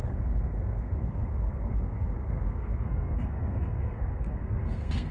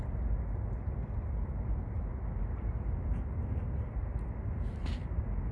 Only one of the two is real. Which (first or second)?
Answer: second